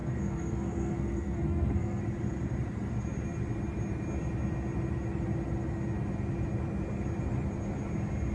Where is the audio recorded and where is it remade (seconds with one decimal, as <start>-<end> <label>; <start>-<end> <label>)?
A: 0.0-2.0 remade; 2.0-8.3 recorded